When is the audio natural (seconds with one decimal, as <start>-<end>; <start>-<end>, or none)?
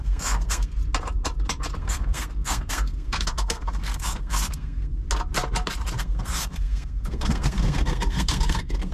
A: 0.8-1.8; 5.0-6.0